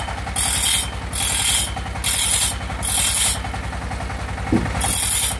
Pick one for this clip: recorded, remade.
recorded